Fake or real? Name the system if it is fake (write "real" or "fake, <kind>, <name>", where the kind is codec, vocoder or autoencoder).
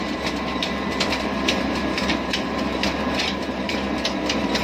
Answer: fake, vocoder, BigVGAN v2